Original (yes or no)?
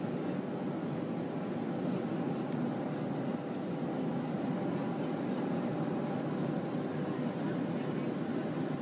yes